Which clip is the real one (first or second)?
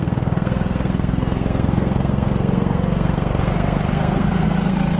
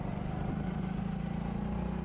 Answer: second